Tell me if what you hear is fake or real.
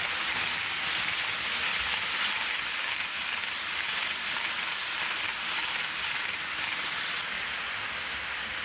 real